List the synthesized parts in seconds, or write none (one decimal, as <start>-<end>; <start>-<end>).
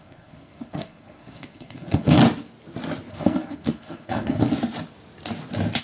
0.0-2.2; 3.1-4.4